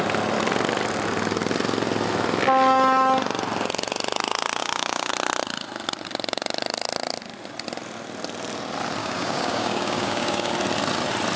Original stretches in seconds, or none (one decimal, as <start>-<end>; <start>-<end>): 0.0-4.6; 5.1-9.0; 10.5-11.4